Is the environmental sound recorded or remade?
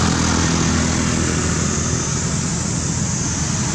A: recorded